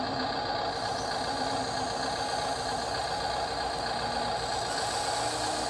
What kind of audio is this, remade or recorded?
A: recorded